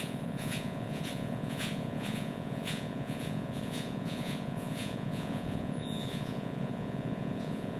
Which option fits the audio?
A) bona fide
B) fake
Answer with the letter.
B